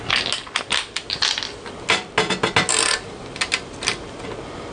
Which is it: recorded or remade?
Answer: recorded